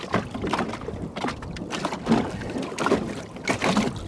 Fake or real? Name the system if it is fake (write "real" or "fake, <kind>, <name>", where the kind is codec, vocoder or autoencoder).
real